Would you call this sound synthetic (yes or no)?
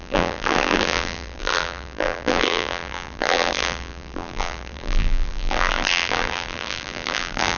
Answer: yes